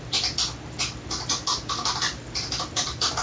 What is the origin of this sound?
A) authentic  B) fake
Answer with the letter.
A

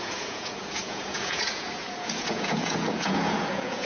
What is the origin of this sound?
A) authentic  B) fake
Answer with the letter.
B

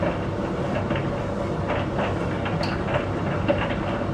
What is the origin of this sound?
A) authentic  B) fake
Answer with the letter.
A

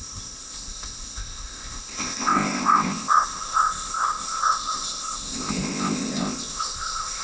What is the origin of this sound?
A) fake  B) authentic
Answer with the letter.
A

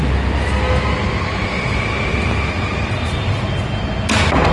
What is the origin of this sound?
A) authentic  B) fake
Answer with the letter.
A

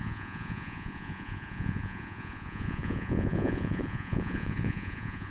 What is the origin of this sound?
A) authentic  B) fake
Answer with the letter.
B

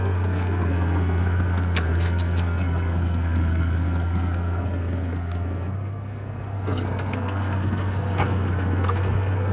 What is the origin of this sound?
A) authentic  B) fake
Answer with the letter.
B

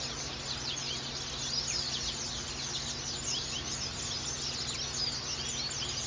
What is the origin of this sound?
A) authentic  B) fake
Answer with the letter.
A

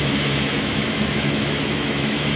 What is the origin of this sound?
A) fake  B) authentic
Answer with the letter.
A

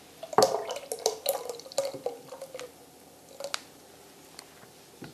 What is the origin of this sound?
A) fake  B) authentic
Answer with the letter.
B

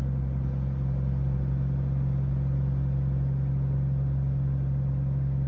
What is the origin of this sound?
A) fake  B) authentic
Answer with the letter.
B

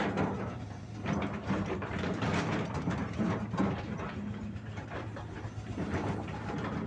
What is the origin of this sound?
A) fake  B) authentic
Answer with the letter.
A